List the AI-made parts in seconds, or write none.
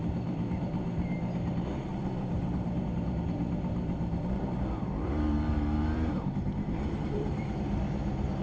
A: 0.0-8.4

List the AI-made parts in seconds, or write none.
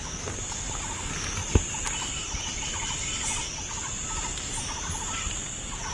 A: none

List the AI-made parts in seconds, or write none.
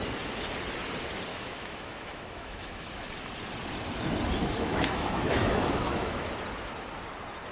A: 1.3-2.9; 4.4-6.3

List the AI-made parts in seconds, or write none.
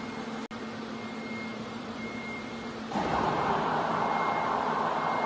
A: 1.5-3.8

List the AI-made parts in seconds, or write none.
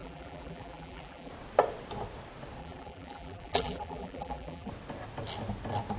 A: 0.0-1.3; 2.6-4.7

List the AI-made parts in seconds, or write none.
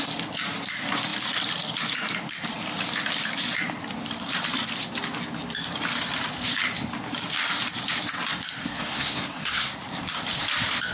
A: 8.6-10.0